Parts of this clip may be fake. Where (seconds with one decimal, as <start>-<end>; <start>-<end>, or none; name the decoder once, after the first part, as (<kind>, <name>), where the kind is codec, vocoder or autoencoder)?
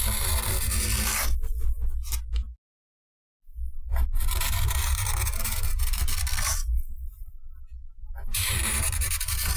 3.9-6.0 (vocoder, BigVGAN v2); 7.1-9.6